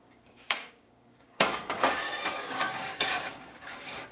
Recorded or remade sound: remade